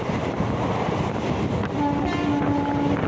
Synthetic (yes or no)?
no